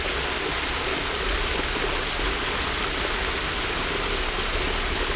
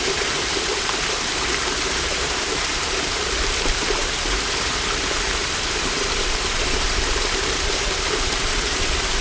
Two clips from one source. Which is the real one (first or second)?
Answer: first